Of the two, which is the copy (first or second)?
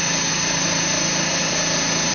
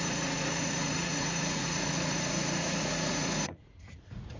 second